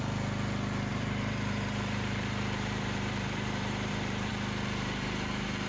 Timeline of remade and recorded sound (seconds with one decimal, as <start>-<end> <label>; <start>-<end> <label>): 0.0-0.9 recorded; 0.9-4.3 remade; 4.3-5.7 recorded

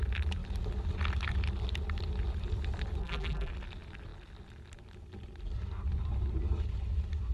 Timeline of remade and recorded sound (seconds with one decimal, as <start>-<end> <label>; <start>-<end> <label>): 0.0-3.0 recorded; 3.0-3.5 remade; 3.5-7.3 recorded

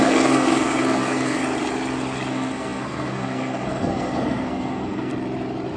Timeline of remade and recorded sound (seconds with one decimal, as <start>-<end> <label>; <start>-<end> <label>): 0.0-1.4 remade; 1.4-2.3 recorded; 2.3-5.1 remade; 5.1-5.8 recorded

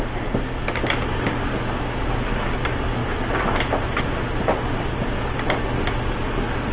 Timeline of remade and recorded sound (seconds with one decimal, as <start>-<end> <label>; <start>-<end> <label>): 0.0-3.0 recorded; 3.0-4.0 remade; 4.0-6.7 recorded

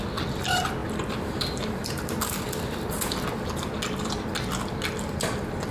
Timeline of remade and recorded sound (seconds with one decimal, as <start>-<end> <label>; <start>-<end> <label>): 0.0-0.8 recorded; 0.8-3.0 remade; 3.0-5.7 recorded

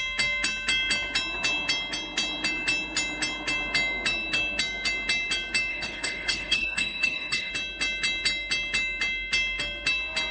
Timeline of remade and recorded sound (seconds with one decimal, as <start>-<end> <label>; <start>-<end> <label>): 0.0-5.7 recorded; 5.7-7.5 remade; 7.5-10.3 recorded

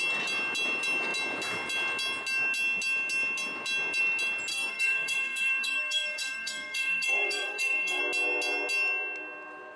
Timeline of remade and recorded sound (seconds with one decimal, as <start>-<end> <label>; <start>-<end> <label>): 0.0-4.5 recorded; 4.5-8.0 remade; 8.0-9.8 recorded

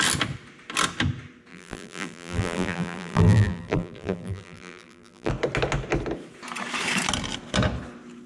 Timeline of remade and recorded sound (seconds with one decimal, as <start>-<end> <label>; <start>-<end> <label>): 0.0-1.5 recorded; 1.5-5.3 remade; 5.3-8.3 recorded